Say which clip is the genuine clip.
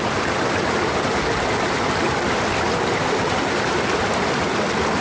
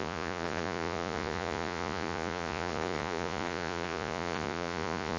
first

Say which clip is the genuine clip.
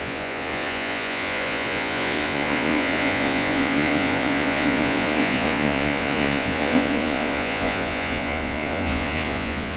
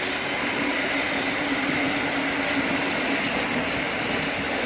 second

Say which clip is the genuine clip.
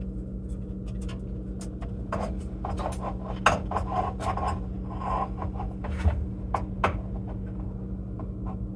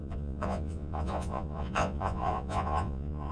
first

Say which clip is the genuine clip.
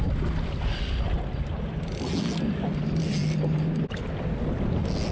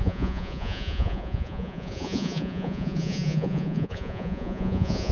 first